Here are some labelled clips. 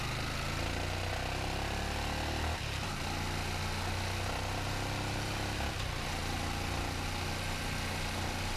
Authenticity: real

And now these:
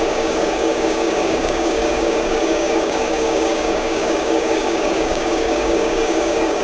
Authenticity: fake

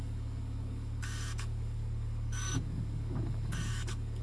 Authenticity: fake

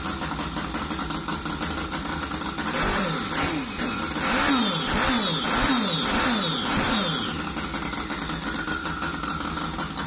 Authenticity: real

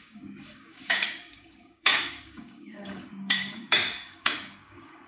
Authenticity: fake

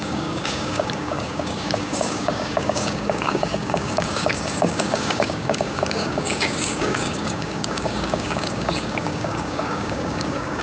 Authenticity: fake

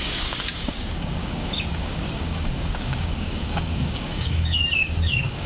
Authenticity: fake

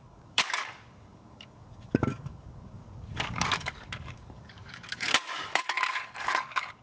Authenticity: fake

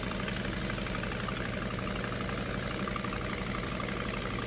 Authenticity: real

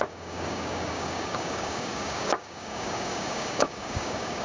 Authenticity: fake